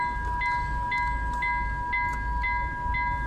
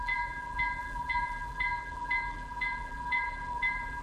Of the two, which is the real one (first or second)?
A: first